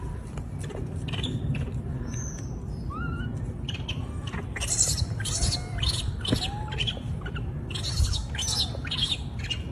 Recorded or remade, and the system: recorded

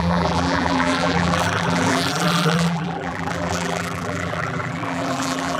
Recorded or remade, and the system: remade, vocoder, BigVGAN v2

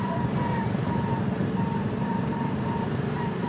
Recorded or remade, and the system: remade, vocoder, BigVGAN v2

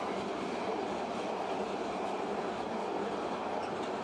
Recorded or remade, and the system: recorded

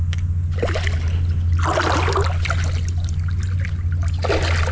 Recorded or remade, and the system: recorded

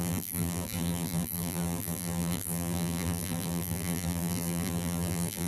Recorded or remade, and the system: remade, vocoder, BigVGAN v2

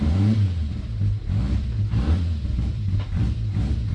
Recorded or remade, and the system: remade, vocoder, BigVGAN v2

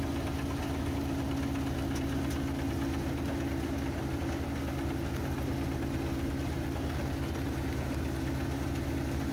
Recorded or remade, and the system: recorded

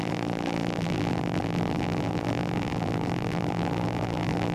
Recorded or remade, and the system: remade, vocoder, BigVGAN v2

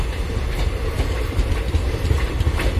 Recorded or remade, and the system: recorded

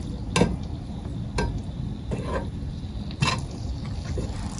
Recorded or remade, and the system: recorded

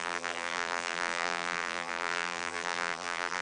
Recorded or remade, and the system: remade, vocoder, BigVGAN v2